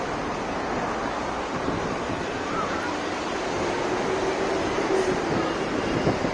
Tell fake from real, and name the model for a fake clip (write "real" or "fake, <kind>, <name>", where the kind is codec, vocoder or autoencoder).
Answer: real